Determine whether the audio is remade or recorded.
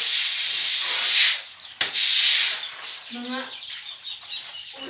recorded